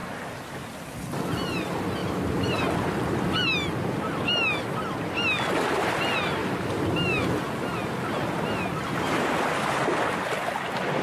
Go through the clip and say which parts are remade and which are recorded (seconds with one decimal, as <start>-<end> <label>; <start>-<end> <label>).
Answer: 0.0-1.1 remade; 1.1-11.0 recorded